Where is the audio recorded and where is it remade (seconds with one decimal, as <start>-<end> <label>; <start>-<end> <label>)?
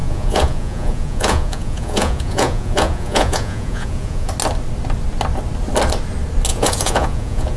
0.0-4.3 remade; 4.3-6.5 recorded; 6.5-7.6 remade